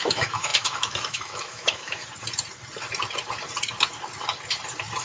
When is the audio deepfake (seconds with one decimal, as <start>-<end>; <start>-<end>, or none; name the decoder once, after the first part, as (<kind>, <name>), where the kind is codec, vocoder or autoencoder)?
0.0-2.0 (autoencoder, DAC-VAE)